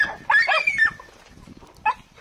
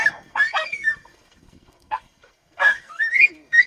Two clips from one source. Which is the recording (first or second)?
first